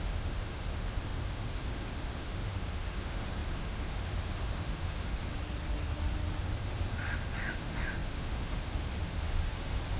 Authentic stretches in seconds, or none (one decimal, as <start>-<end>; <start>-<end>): 5.3-6.4